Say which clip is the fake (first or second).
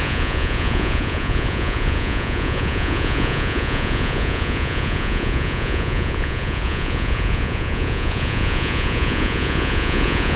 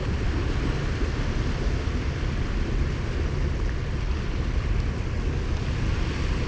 first